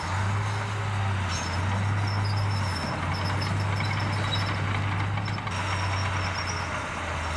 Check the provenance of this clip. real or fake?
real